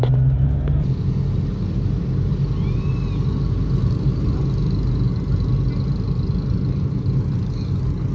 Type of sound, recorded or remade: recorded